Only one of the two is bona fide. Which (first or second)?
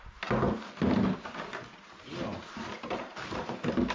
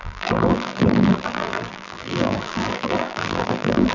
first